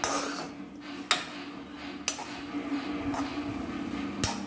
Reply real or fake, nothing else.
real